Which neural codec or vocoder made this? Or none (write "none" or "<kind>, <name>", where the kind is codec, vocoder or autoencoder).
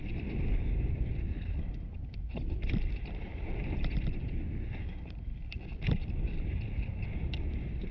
none